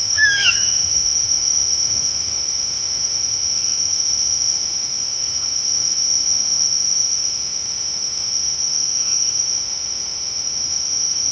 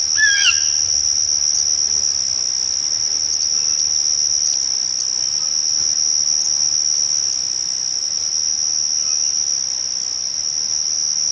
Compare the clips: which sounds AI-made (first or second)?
first